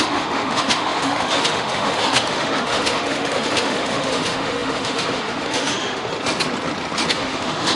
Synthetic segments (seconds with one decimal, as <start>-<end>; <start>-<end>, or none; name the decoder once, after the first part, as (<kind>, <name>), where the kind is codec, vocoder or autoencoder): 0.0-6.1 (autoencoder, DAC-VAE); 7.1-7.8